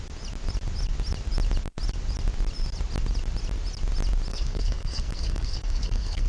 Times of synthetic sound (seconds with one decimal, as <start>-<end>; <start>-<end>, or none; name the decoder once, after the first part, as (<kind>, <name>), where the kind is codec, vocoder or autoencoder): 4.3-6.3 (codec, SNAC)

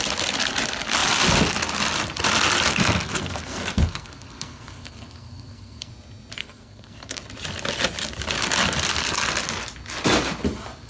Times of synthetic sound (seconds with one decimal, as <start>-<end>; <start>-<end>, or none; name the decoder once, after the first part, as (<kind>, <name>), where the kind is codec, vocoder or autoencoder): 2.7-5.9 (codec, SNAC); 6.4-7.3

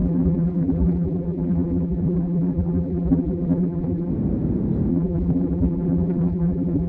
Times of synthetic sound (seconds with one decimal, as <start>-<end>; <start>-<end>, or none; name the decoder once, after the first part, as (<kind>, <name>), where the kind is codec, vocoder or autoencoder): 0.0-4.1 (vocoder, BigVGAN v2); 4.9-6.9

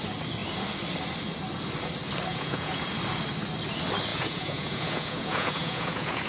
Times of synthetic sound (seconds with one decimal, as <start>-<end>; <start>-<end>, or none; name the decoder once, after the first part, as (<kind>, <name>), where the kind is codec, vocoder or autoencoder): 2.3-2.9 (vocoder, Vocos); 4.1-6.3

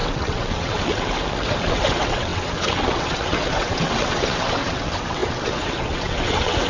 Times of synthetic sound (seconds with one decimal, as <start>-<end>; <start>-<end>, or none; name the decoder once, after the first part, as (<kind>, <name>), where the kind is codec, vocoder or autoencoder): 0.0-6.7 (vocoder, WaveNeXt)

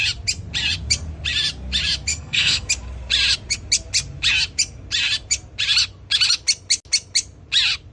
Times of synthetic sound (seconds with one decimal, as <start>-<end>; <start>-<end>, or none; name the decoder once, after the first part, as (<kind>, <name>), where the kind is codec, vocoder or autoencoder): 2.1-2.7 (codec, SNAC)

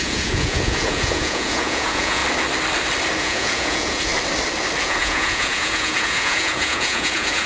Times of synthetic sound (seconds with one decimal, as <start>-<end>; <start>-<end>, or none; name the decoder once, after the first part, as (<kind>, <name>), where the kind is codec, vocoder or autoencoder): 0.0-2.2 (vocoder, Vocos); 3.2-4.1; 4.8-7.5